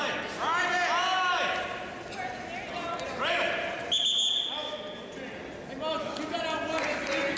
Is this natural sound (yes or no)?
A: yes